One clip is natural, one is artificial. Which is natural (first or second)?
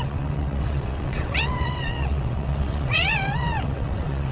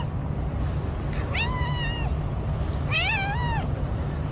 second